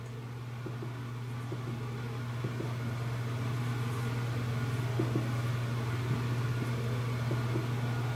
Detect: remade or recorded recorded